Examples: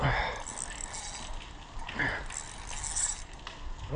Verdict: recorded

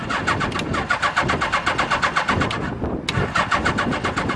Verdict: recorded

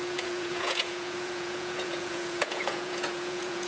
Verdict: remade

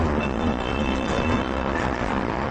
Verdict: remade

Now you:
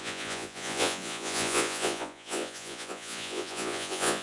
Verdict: remade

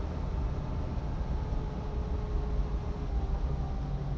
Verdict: recorded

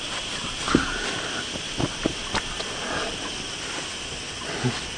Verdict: recorded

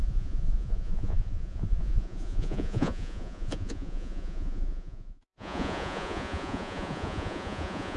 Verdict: remade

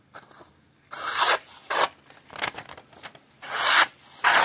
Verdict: recorded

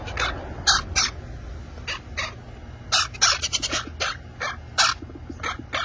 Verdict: recorded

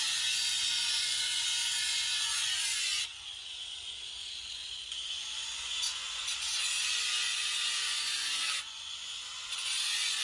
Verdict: remade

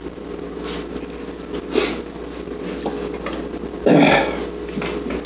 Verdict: recorded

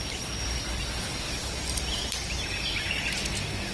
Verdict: recorded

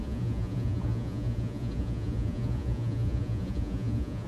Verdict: remade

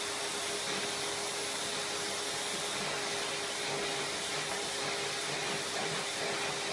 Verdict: recorded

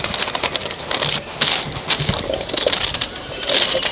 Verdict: recorded